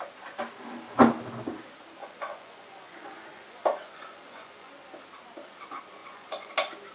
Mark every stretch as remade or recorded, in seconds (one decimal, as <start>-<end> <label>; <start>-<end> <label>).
0.0-2.0 recorded; 2.0-4.7 remade; 4.7-6.0 recorded; 6.0-6.5 remade; 6.5-6.9 recorded